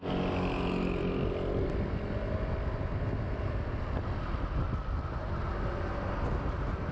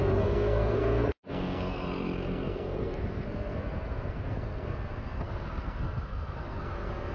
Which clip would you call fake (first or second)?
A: second